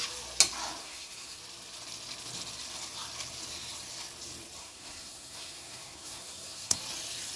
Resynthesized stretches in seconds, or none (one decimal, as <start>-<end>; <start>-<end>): 0.8-1.4; 4.6-6.8